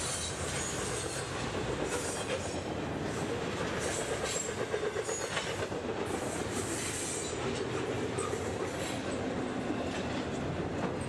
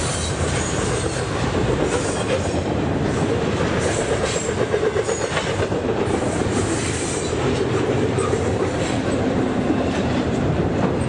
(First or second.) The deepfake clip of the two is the second